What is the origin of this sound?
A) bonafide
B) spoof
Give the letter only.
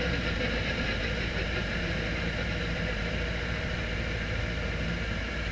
B